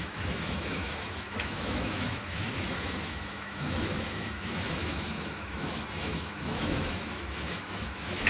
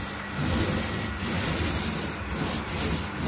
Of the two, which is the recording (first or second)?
second